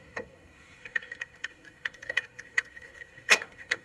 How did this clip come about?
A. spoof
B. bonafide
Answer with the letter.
A